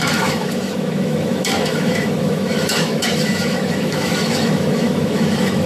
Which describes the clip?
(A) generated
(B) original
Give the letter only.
A